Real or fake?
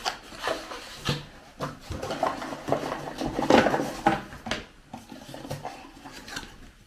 real